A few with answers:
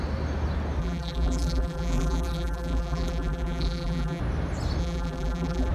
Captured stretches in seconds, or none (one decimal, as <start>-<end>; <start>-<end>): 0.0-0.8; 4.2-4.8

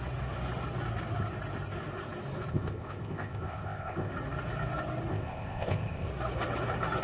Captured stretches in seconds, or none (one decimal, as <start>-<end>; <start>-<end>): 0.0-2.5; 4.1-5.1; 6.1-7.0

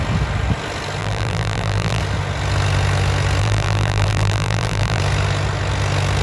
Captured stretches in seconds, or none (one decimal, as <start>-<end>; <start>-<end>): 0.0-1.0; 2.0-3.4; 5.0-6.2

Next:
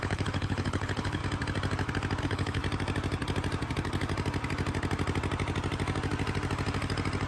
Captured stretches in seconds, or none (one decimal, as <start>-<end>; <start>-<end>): 1.2-2.2; 2.6-7.3

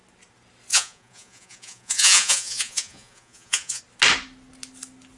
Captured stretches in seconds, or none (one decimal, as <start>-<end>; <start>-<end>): 0.0-0.7; 3.8-5.2